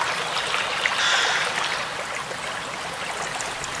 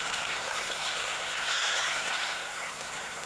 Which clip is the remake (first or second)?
second